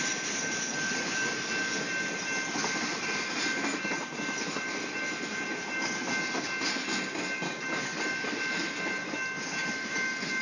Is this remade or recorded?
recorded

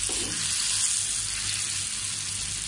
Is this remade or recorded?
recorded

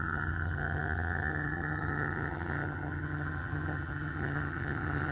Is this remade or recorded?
remade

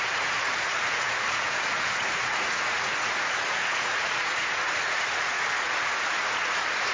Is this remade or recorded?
remade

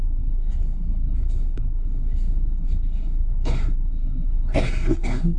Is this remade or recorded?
remade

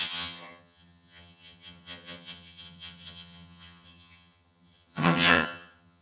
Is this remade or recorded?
remade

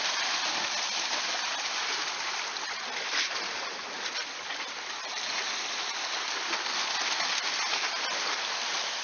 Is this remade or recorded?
recorded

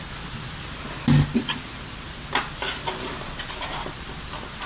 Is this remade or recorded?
recorded